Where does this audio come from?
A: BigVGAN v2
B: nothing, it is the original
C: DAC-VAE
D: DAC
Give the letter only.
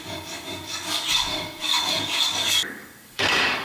D